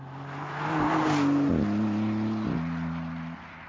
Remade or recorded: recorded